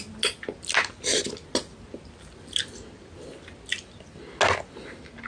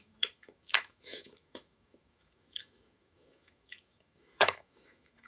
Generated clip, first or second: second